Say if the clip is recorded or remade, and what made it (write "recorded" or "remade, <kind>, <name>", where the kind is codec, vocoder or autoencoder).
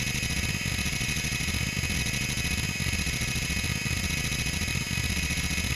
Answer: recorded